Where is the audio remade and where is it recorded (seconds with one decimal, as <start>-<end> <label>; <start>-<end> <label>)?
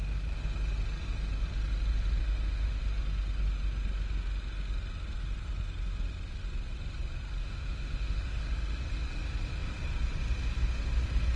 0.0-2.2 recorded; 2.2-2.8 remade; 2.8-7.4 recorded; 7.4-8.4 remade; 8.4-11.4 recorded